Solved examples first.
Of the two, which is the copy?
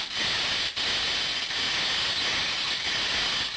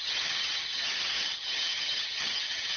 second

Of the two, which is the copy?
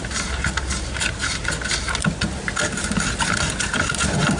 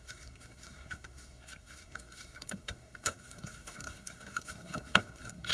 second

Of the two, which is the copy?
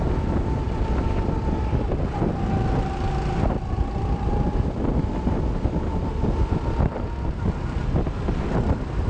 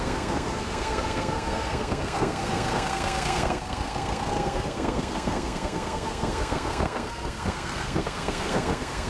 second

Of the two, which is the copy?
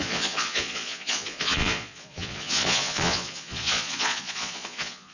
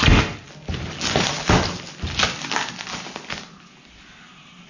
first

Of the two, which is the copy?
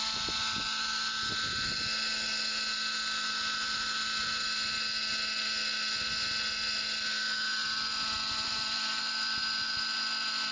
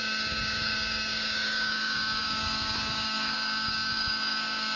second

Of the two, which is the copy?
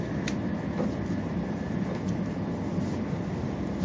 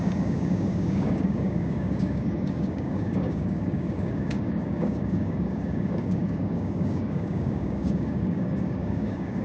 second